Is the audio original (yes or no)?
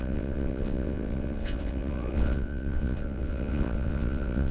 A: no